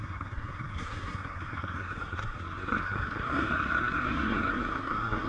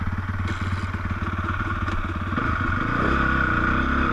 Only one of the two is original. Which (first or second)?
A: second